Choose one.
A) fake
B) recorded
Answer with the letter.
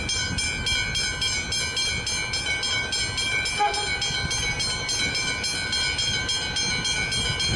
B